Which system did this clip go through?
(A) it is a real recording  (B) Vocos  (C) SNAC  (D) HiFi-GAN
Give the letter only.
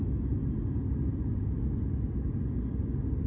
A